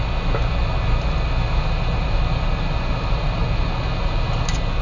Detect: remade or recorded recorded